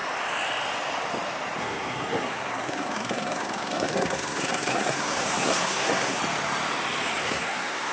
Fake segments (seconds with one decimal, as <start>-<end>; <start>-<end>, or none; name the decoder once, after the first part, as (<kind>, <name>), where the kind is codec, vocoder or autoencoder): 1.6-6.2 (codec, SNAC); 7.2-7.9